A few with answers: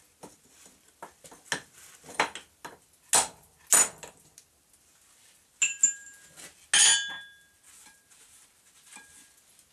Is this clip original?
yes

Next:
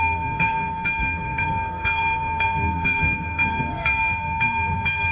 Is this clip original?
no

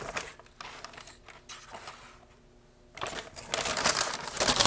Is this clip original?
yes